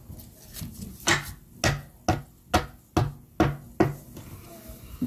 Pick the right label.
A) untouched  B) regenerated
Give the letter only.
A